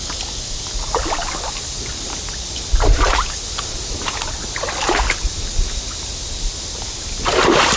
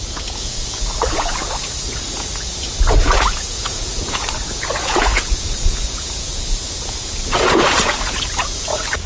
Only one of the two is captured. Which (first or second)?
first